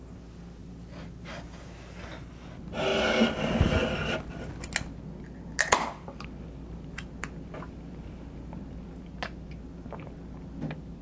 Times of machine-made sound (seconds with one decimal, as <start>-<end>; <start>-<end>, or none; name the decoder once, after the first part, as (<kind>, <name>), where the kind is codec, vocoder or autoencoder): 0.6-2.3 (vocoder, BigVGAN v2)